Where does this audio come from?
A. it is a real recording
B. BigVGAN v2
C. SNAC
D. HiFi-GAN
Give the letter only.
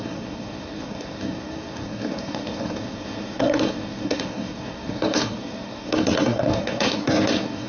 C